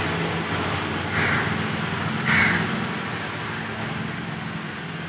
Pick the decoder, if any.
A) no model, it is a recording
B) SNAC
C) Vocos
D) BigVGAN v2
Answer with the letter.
A